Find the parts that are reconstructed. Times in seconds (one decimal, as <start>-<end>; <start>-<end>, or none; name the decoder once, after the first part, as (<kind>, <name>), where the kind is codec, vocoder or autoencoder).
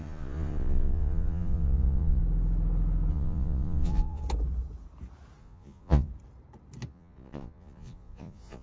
0.0-2.2 (vocoder, Vocos); 3.1-4.2; 5.4-6.1; 6.9-8.6